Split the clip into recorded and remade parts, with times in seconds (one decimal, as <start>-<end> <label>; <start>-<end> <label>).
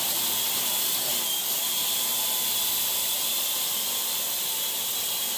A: 0.0-5.4 recorded